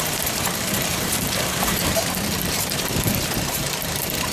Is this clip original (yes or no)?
no